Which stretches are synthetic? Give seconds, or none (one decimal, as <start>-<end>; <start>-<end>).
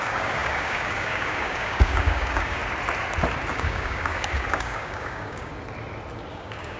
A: 0.0-2.6; 3.5-5.5; 6.3-6.8